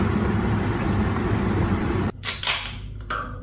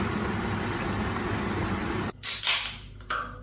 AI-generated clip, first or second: first